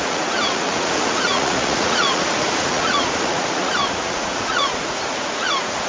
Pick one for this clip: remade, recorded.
remade